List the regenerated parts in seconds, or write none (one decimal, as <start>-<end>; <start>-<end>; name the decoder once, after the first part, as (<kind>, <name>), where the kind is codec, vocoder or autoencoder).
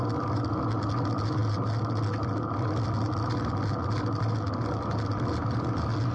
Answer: none